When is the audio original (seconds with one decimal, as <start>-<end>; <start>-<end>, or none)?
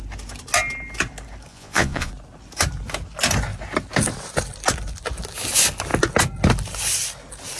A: 0.0-1.5; 2.1-7.6